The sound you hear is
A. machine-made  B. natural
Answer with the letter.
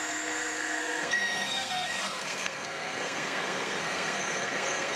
A